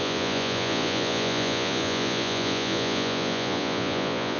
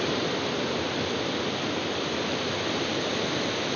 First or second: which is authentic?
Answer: second